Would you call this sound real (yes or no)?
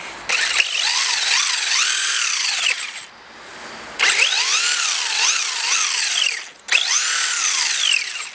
yes